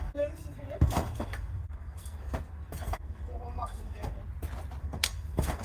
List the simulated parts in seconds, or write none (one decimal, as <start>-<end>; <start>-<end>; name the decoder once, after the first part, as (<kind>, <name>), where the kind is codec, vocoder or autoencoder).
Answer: 0.0-4.2 (codec, SNAC); 4.8-5.6